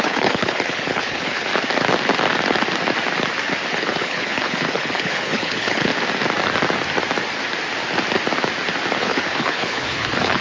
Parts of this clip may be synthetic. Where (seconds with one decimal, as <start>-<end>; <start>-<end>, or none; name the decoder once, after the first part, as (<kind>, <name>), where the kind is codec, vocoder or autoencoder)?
0.0-1.5 (codec, HILCodec); 3.7-5.9; 9.0-10.4